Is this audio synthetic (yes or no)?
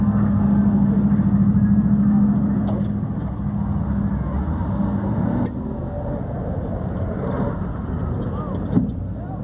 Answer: no